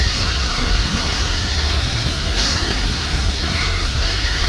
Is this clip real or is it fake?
fake